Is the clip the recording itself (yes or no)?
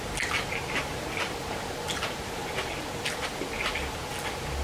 yes